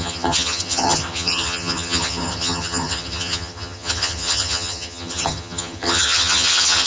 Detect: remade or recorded remade